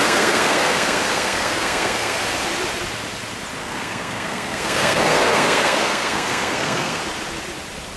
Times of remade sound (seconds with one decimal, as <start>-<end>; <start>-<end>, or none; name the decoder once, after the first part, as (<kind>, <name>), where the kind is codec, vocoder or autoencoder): 0.0-2.2 (codec, SNAC); 3.6-7.0

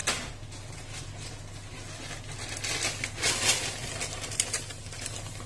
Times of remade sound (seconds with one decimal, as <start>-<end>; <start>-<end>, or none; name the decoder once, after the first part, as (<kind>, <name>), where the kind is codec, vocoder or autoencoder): none

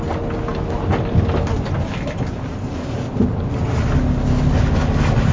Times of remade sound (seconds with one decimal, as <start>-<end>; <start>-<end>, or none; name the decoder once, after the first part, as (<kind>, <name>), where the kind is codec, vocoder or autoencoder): none

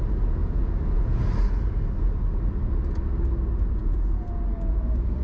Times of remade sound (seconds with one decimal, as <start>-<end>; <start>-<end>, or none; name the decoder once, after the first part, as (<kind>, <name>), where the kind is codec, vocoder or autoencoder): 0.4-1.2 (vocoder, Vocos); 3.8-4.4